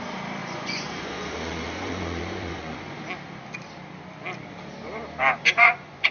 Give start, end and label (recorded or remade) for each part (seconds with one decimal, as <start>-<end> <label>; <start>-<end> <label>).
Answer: 0.0-0.4 recorded; 0.4-3.0 remade; 3.0-5.4 recorded; 5.4-6.1 remade